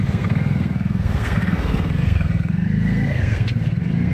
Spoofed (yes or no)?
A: yes